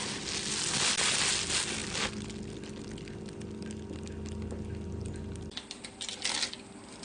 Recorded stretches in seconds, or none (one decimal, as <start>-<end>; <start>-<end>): 0.0-7.0